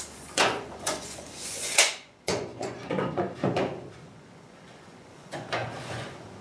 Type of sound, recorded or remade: remade